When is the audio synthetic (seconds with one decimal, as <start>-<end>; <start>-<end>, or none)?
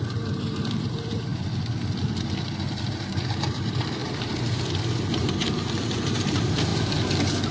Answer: 0.0-1.3; 2.8-6.7